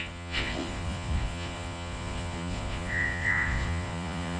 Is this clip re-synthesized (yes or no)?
yes